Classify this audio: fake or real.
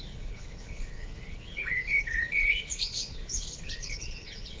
fake